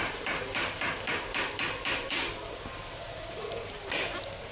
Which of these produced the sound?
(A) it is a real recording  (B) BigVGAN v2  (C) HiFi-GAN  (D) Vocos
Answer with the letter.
A